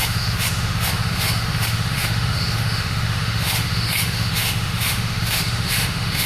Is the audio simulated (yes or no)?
yes